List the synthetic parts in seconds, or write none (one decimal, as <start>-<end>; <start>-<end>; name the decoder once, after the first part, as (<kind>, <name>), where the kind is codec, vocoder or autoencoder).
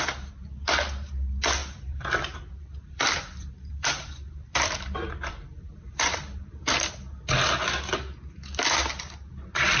1.6-6.9 (vocoder, BigVGAN v2)